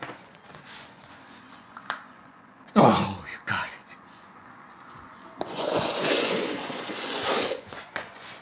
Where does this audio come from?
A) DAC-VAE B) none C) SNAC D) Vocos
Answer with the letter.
D